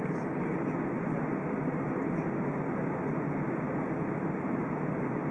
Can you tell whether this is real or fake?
real